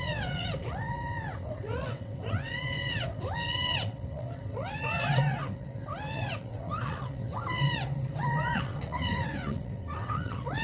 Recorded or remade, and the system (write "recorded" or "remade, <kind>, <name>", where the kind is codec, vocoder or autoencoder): remade, vocoder, WaveNeXt